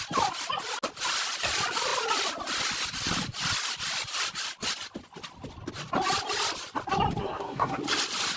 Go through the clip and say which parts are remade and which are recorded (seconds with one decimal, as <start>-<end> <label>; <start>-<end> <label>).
0.0-7.2 recorded; 7.2-7.8 remade; 7.8-8.4 recorded